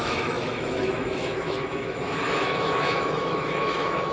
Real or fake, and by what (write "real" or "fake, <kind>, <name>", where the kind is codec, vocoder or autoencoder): fake, autoencoder, DAC-VAE